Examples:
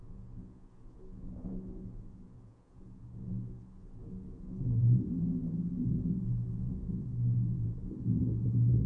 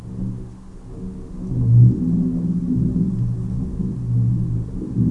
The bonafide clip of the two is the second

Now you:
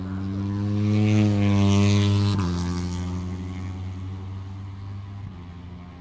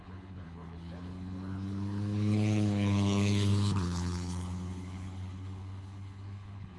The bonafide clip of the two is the first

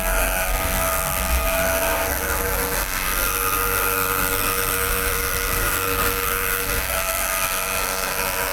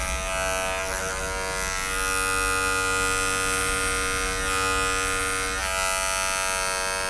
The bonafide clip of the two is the second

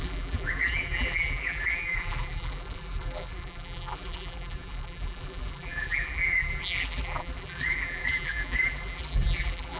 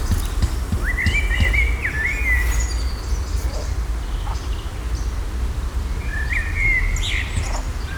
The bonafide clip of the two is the second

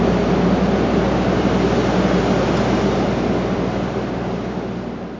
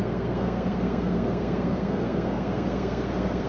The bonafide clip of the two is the first